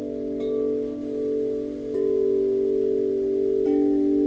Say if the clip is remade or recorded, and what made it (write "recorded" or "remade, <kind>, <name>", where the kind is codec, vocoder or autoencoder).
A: recorded